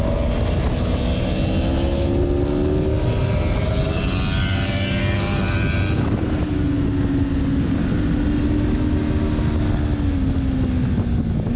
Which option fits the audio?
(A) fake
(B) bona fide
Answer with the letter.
B